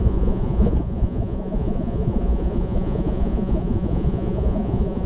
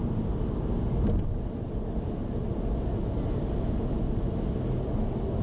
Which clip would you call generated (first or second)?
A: first